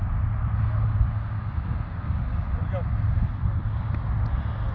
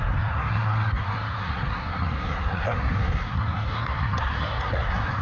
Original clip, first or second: first